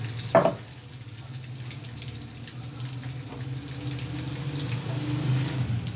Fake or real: real